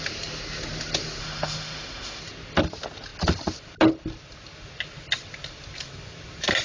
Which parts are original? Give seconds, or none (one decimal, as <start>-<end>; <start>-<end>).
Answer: 0.0-1.2; 2.2-6.6